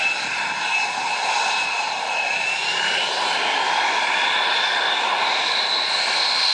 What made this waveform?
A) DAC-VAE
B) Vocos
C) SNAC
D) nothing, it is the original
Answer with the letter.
D